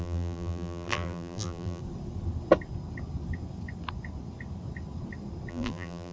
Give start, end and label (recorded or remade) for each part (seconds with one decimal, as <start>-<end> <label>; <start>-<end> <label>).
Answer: 0.0-1.8 remade; 1.8-5.5 recorded; 5.5-6.1 remade